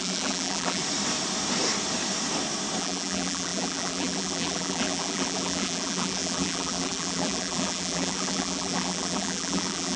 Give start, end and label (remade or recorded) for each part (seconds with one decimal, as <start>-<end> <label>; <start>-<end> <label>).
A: 0.0-0.8 remade; 0.8-2.8 recorded; 2.8-10.0 remade